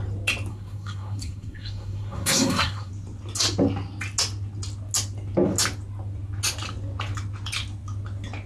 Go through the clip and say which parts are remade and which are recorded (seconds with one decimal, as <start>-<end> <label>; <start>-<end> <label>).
0.0-0.5 recorded; 0.5-2.9 remade; 2.9-8.5 recorded

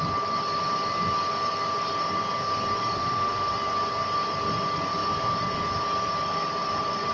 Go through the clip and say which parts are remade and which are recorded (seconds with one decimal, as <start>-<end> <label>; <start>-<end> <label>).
0.0-3.0 recorded; 3.0-3.5 remade; 3.5-7.1 recorded

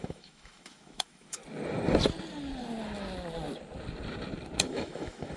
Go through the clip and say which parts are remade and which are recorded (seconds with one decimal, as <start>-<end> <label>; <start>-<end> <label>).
0.0-1.4 remade; 1.4-4.6 recorded; 4.6-5.4 remade

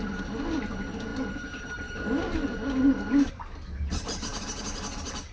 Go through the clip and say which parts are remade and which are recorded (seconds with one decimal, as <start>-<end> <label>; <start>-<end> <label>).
0.0-5.3 recorded

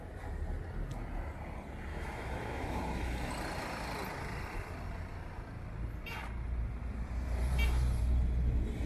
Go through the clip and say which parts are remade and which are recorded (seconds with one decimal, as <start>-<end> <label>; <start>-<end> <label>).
0.0-1.9 recorded; 1.9-3.3 remade; 3.3-8.9 recorded